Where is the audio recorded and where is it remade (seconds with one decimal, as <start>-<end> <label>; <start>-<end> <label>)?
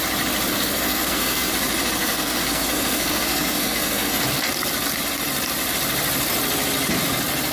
0.0-0.5 recorded; 0.5-1.5 remade; 1.5-2.0 recorded; 2.0-4.2 remade; 4.2-7.5 recorded